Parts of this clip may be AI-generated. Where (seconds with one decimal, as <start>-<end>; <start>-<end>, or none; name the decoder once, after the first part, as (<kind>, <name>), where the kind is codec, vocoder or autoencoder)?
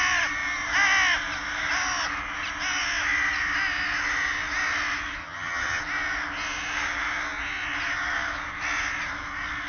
5.2-5.8 (vocoder, HiFi-GAN)